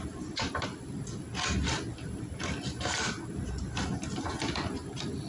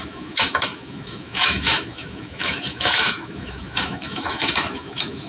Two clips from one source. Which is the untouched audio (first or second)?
first